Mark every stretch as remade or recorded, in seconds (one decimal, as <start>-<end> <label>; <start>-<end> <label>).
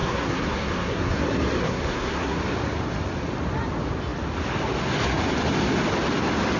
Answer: 0.0-1.2 remade; 1.2-1.6 recorded; 1.6-2.4 remade; 2.4-6.6 recorded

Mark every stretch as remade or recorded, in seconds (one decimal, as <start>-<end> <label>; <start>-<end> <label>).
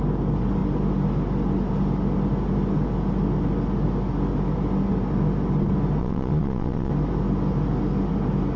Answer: 0.0-6.0 recorded; 6.0-6.9 remade; 6.9-8.6 recorded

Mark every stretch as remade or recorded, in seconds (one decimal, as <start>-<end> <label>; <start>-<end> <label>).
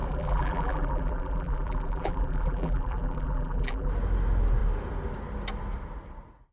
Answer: 0.0-3.9 remade; 3.9-6.5 recorded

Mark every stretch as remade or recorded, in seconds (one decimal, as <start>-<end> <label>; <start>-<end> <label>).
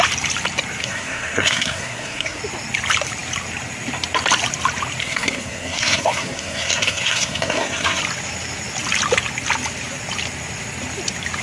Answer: 0.0-0.8 recorded; 0.8-2.4 remade; 2.4-5.0 recorded; 5.0-8.0 remade; 8.0-11.4 recorded